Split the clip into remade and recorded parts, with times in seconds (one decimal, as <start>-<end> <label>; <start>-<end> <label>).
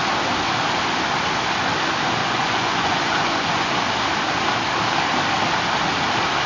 0.0-2.2 recorded; 2.2-3.7 remade; 3.7-6.5 recorded